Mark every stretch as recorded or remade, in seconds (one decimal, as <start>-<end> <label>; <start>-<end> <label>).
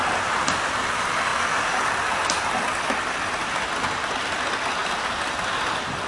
0.0-6.1 recorded